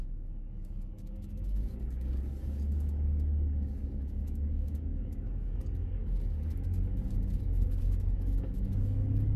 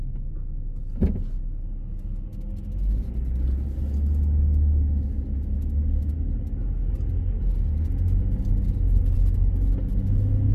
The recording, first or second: second